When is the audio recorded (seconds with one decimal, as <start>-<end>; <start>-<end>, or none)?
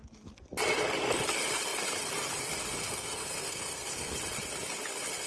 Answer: 0.0-2.8; 4.1-5.3